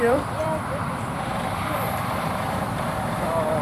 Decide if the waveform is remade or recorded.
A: remade